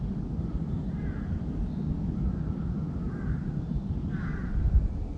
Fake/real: real